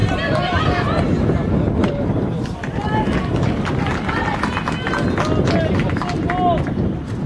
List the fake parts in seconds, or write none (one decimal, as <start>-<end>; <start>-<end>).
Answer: 0.0-0.8; 1.8-3.8